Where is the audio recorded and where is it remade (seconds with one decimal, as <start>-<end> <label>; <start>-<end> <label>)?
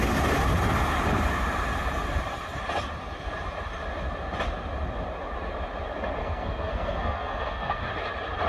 0.0-6.2 recorded; 6.2-7.9 remade; 7.9-8.5 recorded